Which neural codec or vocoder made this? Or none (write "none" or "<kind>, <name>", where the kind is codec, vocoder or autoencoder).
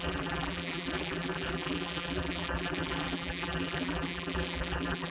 vocoder, BigVGAN v2